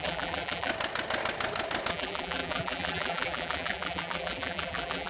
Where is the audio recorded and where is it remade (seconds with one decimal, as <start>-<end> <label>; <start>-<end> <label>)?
0.0-0.7 remade; 0.7-1.9 recorded; 1.9-5.1 remade